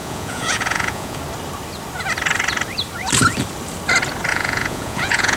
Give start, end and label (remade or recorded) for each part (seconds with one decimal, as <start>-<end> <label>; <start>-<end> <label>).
0.0-1.2 remade; 1.2-4.3 recorded; 4.3-5.4 remade